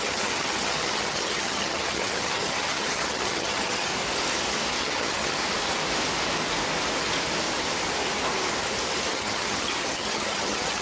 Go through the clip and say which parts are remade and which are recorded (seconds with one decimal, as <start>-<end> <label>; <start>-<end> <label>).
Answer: 0.0-3.9 remade; 3.9-4.8 recorded; 4.8-5.4 remade; 5.4-9.1 recorded; 9.1-10.8 remade